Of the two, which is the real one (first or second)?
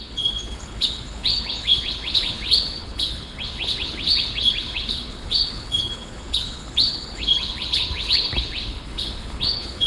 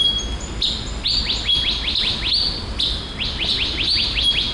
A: second